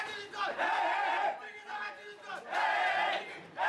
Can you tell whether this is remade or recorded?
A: recorded